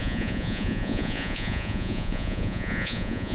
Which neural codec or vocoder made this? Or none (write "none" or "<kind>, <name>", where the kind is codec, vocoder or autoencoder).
vocoder, Vocos